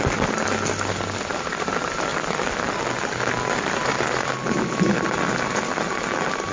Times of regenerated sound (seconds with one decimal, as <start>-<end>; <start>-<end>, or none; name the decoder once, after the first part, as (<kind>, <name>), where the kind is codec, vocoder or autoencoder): none

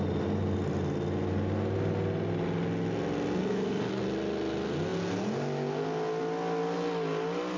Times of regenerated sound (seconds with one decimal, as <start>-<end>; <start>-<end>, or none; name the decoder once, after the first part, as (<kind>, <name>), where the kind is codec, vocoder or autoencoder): 3.4-4.0 (codec, SNAC)

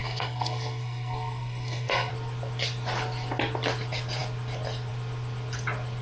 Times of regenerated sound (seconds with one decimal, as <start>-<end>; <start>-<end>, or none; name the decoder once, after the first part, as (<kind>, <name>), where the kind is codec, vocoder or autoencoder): 0.0-2.1 (codec, SNAC)

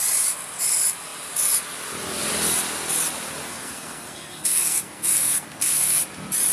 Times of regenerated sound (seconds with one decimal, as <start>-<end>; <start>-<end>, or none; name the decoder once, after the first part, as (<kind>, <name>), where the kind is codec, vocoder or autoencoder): 3.4-6.0 (codec, SNAC)

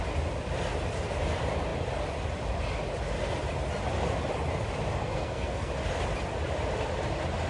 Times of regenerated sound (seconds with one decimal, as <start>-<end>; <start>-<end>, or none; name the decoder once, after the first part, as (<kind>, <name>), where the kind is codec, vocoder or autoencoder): 5.0-5.7 (codec, SNAC)

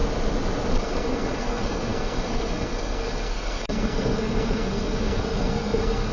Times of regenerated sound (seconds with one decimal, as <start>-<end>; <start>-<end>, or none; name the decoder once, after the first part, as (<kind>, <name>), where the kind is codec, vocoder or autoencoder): 0.7-6.1 (codec, SNAC)

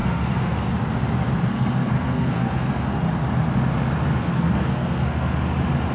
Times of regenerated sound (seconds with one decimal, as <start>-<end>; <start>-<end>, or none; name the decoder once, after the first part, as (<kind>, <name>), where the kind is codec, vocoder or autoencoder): 0.0-0.7 (codec, SNAC); 1.5-2.8; 4.2-5.3